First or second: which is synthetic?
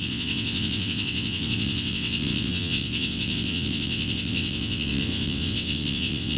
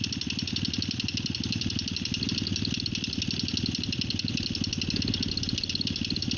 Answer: first